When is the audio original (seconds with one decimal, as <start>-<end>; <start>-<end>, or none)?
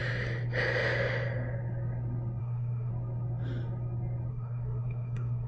0.0-2.4; 2.9-4.3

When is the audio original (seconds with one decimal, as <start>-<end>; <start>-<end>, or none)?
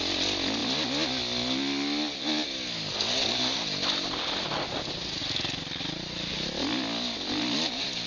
0.0-8.1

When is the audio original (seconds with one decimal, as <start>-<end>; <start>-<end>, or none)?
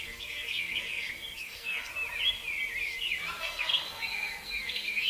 1.9-3.4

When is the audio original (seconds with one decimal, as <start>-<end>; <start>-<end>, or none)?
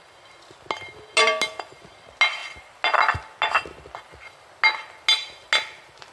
0.0-6.1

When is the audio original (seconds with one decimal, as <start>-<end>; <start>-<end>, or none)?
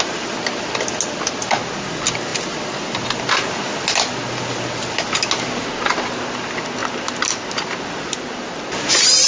0.0-9.3